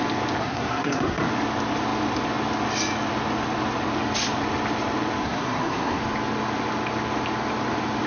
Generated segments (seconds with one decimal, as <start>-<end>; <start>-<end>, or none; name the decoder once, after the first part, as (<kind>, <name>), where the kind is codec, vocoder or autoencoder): 0.4-1.2 (codec, SNAC); 5.2-6.0